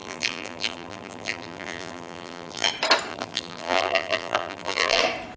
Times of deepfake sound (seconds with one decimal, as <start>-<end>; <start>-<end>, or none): 0.0-2.7; 3.1-5.0